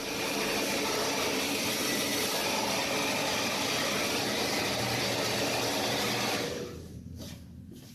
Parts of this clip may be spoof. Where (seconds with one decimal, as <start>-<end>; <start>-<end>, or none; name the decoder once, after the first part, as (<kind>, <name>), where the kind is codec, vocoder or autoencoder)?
none